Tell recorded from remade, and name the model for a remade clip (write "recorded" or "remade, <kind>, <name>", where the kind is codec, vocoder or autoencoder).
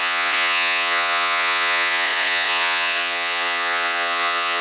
remade, vocoder, Vocos